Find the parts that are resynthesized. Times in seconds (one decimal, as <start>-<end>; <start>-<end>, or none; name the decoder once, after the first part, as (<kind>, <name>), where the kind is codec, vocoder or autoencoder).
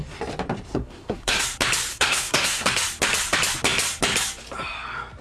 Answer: 0.7-1.4 (codec, SNAC); 1.9-2.7